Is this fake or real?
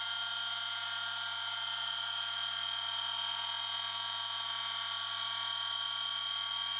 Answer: real